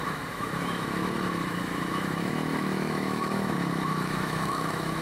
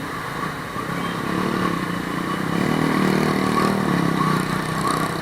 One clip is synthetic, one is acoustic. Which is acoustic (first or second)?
second